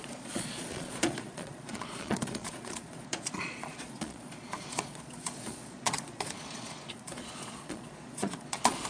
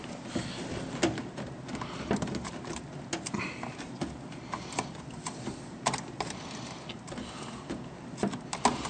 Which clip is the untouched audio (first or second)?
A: second